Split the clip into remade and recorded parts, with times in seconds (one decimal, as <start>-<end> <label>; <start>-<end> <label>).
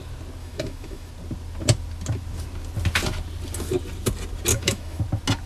0.0-0.4 recorded; 0.4-1.1 remade; 1.1-4.5 recorded; 4.5-5.0 remade; 5.0-5.5 recorded